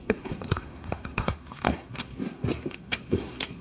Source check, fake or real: fake